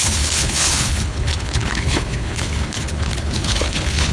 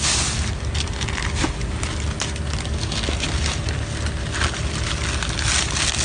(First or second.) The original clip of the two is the second